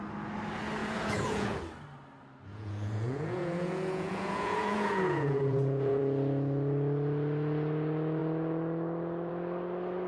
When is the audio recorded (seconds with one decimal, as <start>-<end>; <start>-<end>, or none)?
0.0-0.8; 1.6-2.5; 6.0-10.1